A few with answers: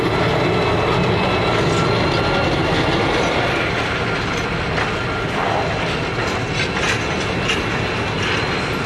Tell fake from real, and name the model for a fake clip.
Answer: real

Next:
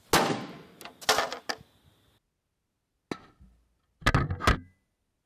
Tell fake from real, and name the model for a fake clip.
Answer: real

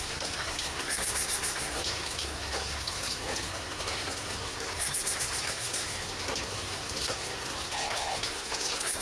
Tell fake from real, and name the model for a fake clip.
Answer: fake, codec, SNAC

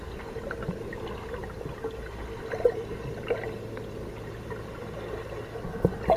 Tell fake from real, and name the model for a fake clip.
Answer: real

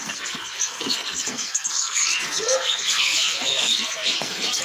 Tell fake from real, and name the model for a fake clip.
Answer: fake, codec, SNAC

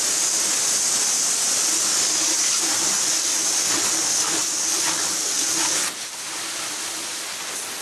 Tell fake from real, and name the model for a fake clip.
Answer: real